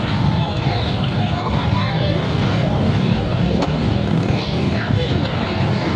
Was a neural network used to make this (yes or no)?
yes